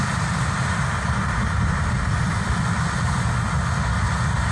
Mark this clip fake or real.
real